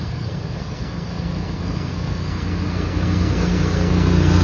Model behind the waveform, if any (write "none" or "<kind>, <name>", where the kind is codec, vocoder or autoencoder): codec, SNAC